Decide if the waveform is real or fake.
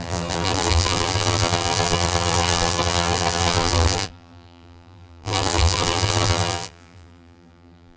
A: fake